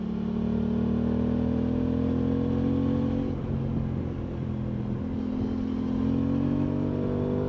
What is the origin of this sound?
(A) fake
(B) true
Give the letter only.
B